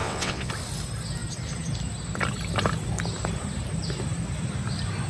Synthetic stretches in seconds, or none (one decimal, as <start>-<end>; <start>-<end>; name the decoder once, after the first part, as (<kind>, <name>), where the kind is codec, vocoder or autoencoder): 0.0-0.5 (vocoder, WaveNeXt)